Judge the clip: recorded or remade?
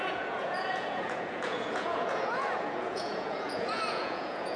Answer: remade